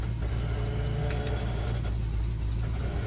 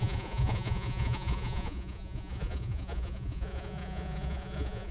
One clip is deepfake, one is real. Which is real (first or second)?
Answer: first